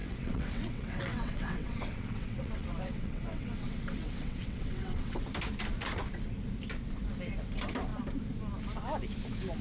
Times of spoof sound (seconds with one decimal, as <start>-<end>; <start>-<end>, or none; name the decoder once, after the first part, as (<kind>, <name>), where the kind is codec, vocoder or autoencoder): 0.0-5.2 (vocoder, WaveNeXt)